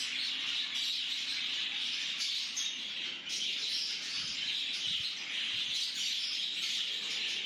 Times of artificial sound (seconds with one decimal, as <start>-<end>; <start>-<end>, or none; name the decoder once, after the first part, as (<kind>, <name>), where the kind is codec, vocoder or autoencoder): 1.3-3.0 (vocoder, BigVGAN v2)

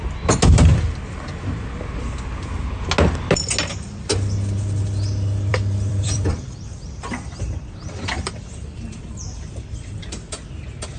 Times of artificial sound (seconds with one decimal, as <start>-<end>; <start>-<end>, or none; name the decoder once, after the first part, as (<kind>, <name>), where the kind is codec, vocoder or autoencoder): 5.5-10.1 (vocoder, BigVGAN v2)

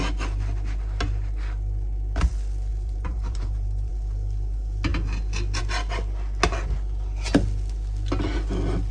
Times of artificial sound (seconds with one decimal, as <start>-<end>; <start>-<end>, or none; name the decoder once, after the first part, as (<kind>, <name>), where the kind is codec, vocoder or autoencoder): 2.7-3.9 (vocoder, BigVGAN v2)

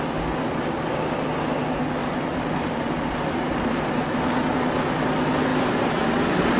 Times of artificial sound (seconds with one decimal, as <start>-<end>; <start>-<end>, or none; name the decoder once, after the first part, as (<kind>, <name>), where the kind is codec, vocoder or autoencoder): 2.0-3.0 (vocoder, BigVGAN v2); 5.5-6.6

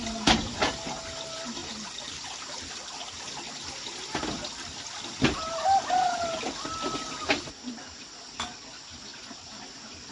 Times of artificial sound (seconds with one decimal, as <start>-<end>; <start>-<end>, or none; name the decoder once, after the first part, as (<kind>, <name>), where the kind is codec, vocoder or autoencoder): 1.6-2.6 (vocoder, BigVGAN v2); 9.1-10.1

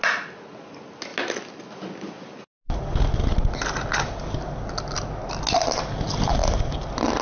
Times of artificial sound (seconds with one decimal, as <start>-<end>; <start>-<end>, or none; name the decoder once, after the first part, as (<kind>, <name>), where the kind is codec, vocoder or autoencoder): none

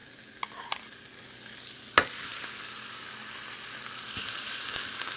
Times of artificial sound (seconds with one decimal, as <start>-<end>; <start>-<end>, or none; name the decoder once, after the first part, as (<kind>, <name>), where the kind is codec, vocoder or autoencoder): none

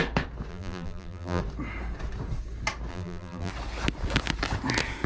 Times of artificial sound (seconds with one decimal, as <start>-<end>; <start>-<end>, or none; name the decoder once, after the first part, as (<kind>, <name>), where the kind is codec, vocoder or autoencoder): 0.5-1.4 (vocoder, BigVGAN v2); 2.9-3.5